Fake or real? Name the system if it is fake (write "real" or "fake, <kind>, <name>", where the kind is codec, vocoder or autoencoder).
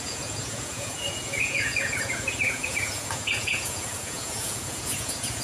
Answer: fake, vocoder, Vocos